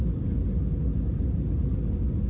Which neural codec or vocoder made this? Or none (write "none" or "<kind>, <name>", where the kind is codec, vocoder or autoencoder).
none